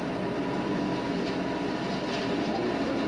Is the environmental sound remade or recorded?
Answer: remade